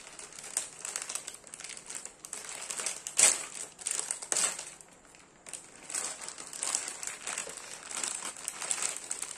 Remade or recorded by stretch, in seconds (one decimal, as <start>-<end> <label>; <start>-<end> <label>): 0.0-9.4 recorded